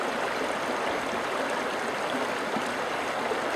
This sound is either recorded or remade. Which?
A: recorded